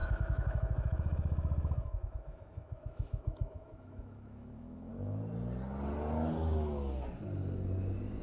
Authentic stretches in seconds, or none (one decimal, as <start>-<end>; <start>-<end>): 4.9-8.2